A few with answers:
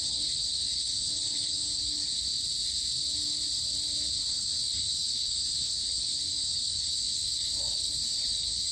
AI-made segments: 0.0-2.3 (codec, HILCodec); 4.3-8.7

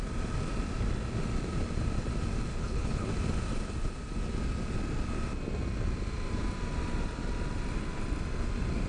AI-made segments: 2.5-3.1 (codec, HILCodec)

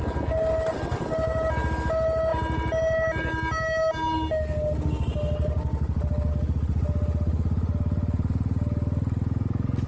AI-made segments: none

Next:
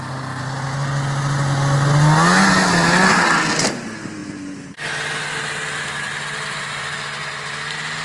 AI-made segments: none

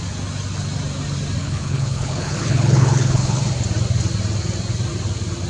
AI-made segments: 1.4-3.4 (codec, HILCodec)

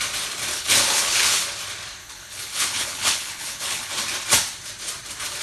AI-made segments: 0.5-1.4 (codec, HILCodec); 2.0-3.9

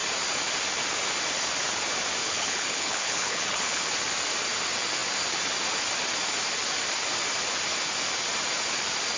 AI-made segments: 2.2-3.8 (codec, HILCodec)